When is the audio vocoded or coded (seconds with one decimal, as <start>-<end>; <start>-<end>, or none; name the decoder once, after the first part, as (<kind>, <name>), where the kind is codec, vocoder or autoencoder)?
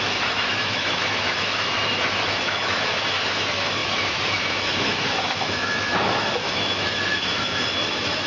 0.0-8.3 (autoencoder, DAC-VAE)